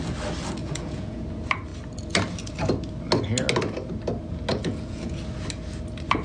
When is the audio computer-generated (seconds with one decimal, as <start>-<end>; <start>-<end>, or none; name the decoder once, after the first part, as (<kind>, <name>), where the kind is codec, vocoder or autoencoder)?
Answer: 0.6-1.2 (vocoder, Vocos); 4.5-5.2

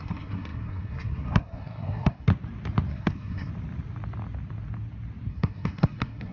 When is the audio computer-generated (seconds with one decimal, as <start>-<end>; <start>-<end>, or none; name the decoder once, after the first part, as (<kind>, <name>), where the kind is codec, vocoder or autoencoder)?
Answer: 0.0-2.3 (codec, SNAC); 2.9-3.5; 5.3-6.3

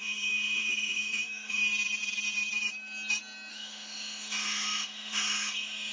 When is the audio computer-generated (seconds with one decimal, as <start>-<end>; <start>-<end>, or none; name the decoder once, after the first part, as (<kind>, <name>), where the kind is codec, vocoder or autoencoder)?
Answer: 0.0-1.6 (autoencoder, DAC-VAE); 3.5-5.9